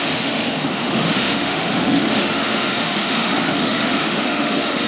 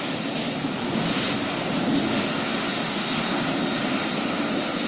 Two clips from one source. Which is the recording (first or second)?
second